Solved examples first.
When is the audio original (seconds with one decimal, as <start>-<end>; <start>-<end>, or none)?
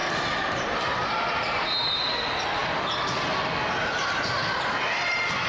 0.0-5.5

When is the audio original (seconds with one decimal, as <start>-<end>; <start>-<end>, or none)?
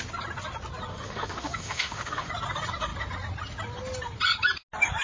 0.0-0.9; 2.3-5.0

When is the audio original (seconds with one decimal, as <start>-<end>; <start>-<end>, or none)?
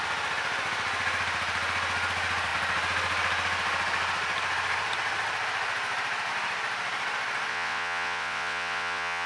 0.0-7.5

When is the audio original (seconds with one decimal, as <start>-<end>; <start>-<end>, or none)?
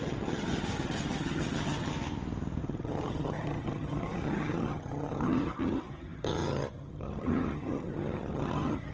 1.9-2.6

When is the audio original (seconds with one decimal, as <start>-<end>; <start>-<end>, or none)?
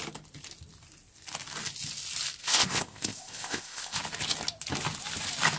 0.0-2.4; 4.0-5.6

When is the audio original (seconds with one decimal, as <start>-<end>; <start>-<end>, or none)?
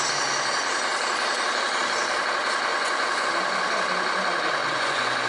0.0-2.7; 3.3-4.6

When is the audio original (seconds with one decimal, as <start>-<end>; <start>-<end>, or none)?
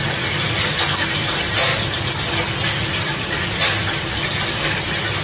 0.0-5.2